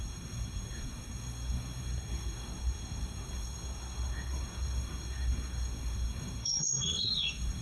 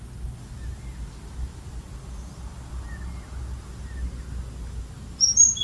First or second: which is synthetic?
first